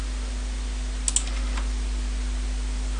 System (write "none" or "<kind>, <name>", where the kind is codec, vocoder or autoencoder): none